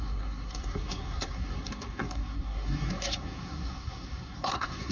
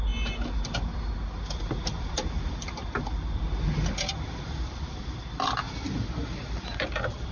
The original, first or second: second